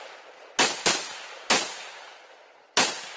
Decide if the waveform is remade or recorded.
recorded